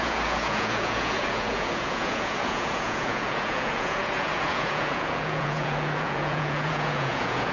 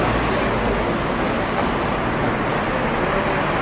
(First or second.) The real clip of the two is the second